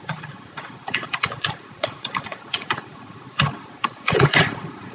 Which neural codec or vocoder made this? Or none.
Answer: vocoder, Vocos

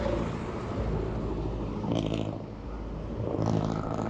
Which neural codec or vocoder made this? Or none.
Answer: none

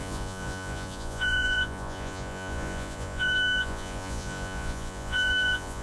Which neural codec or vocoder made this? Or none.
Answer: vocoder, Vocos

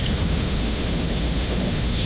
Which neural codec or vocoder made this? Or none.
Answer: autoencoder, DAC-VAE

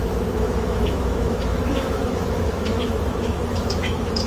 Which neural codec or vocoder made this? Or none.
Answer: autoencoder, DAC-VAE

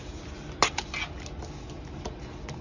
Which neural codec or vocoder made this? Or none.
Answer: none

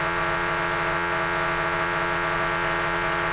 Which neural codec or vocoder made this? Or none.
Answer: vocoder, Vocos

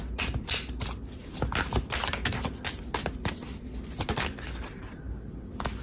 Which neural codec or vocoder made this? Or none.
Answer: none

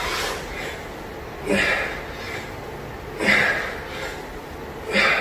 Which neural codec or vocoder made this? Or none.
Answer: none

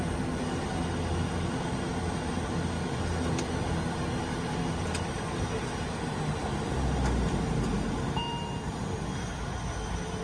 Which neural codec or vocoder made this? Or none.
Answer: none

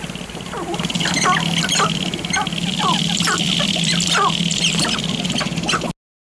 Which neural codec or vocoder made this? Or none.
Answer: none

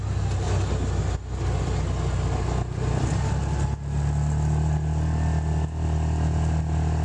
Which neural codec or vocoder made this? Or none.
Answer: none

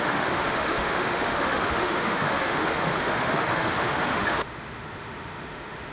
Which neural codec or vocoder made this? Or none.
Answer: autoencoder, DAC-VAE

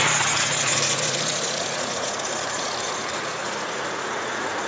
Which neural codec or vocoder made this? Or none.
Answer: vocoder, Vocos